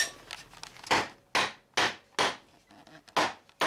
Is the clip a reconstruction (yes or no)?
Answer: no